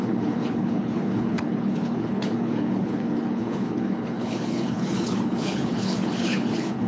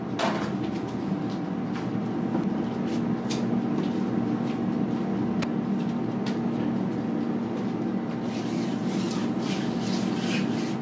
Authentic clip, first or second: second